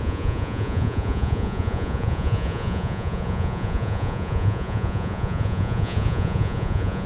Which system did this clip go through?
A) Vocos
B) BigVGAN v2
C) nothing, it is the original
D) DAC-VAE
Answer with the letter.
A